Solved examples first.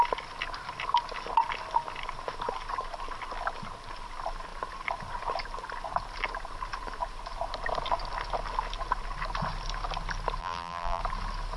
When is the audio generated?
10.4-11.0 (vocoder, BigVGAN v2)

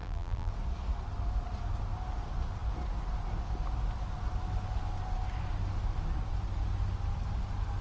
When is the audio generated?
0.0-0.5 (vocoder, BigVGAN v2)

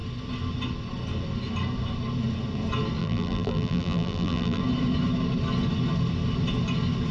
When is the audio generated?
3.0-4.6 (vocoder, BigVGAN v2)

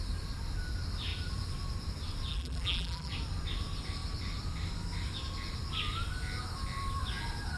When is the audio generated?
2.3-3.1 (vocoder, BigVGAN v2)

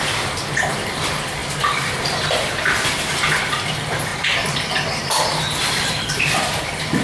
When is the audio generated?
0.0-1.4 (vocoder, BigVGAN v2); 3.6-4.1; 5.4-7.0